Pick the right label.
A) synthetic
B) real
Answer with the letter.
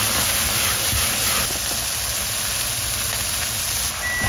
B